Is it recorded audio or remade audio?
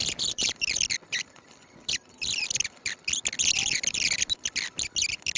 recorded